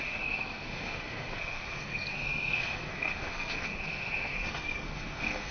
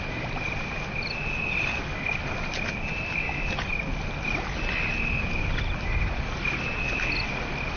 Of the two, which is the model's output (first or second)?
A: first